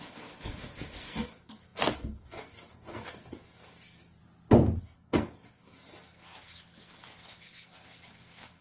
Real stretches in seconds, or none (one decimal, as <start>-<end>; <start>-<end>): 4.2-4.8